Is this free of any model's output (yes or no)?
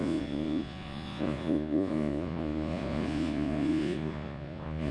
no